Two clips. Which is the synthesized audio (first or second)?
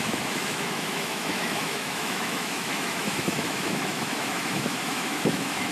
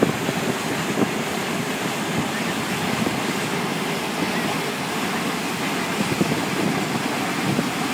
first